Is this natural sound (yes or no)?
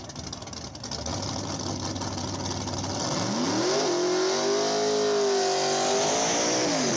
yes